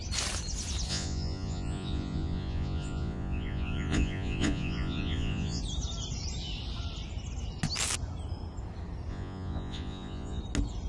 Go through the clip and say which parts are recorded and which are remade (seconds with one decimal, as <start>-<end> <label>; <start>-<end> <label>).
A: 0.0-0.9 recorded; 0.9-5.6 remade; 5.6-9.1 recorded; 9.1-10.4 remade; 10.4-10.9 recorded